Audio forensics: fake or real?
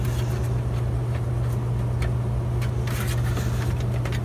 real